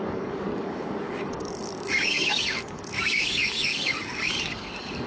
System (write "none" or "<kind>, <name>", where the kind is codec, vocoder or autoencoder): codec, DAC